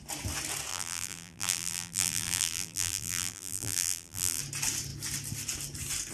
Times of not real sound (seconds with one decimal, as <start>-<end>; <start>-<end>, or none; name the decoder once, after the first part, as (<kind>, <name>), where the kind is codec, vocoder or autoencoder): 0.7-4.4 (vocoder, BigVGAN v2)